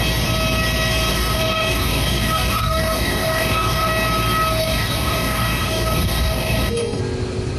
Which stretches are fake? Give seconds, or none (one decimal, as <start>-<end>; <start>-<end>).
1.1-3.9; 4.6-7.0